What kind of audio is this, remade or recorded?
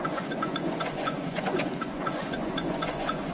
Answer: remade